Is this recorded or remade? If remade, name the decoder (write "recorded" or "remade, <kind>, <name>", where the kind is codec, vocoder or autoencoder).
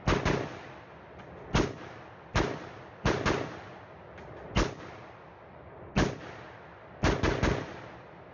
recorded